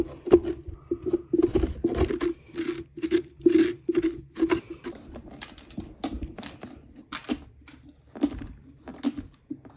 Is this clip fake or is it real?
real